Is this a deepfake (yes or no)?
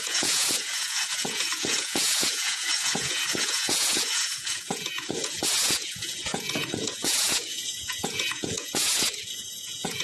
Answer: yes